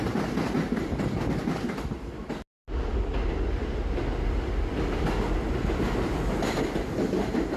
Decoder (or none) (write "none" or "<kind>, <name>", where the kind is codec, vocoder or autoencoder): none